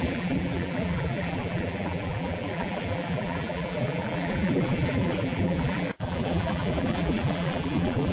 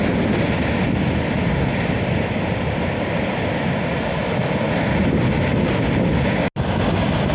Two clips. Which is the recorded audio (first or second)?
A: second